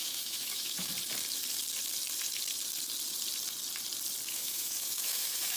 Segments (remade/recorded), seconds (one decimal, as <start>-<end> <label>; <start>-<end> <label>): 0.0-0.9 remade; 0.9-4.3 recorded; 4.3-5.6 remade